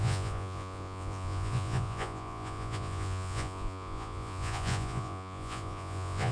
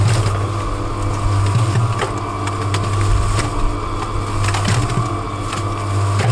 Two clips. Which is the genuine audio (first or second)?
second